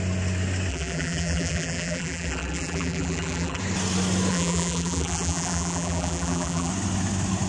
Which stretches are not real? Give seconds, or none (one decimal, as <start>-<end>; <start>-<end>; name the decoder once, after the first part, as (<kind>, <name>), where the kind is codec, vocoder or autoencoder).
0.7-3.6 (vocoder, BigVGAN v2); 4.3-6.7